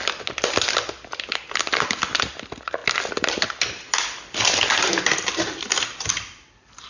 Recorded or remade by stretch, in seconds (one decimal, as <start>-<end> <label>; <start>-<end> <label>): 0.0-6.9 recorded